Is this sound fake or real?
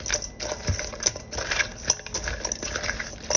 real